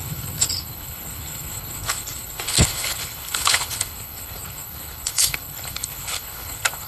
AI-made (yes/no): yes